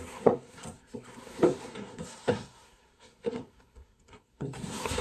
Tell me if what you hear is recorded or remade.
remade